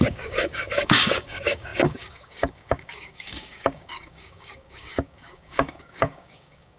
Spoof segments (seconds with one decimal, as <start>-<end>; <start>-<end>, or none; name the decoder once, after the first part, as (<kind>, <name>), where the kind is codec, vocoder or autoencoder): 0.0-6.8 (codec, DAC)